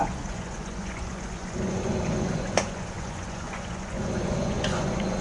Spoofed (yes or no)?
yes